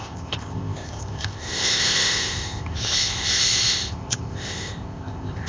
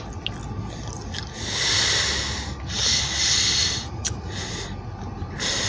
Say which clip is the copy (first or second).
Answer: first